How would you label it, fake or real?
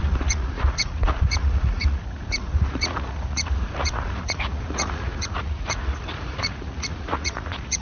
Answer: fake